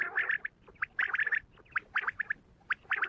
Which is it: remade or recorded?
recorded